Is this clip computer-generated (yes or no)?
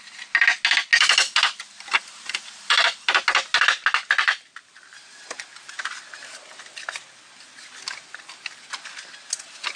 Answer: no